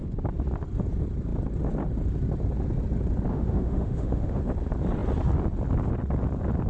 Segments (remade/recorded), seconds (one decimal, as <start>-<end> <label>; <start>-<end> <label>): 0.0-3.3 recorded; 3.3-4.4 remade; 4.4-6.7 recorded